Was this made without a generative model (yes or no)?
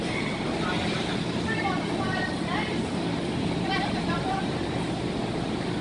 no